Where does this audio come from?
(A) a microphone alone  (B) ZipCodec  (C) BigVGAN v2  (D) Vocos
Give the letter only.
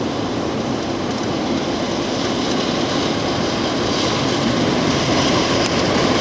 A